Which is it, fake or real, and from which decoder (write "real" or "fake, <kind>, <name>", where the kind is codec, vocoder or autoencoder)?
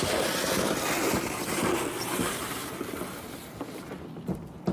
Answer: real